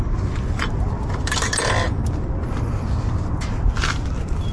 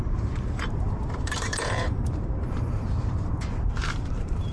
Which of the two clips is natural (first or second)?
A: first